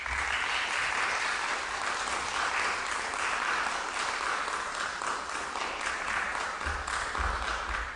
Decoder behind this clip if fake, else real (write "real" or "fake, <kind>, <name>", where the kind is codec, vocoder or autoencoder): real